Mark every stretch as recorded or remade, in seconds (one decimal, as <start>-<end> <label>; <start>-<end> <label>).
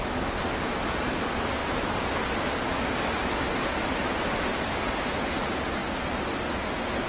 0.0-7.1 recorded